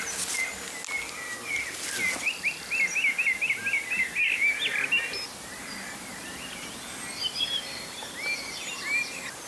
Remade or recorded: recorded